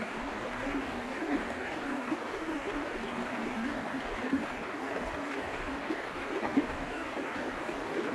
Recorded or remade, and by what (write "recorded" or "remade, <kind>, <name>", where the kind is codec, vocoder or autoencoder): remade, codec, DAC